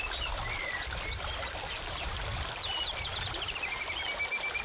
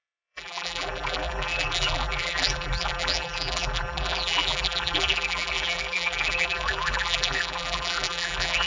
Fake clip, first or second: second